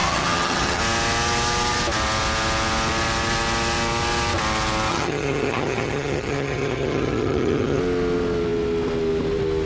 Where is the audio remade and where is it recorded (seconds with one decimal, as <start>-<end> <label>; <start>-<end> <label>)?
0.0-0.8 remade; 0.8-4.9 recorded; 4.9-7.8 remade; 7.8-9.7 recorded